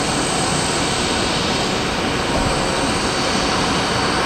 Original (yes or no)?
yes